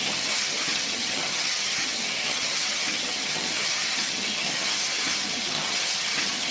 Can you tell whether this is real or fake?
fake